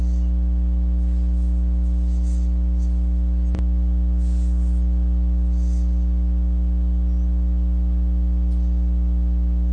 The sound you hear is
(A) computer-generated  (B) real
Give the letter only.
B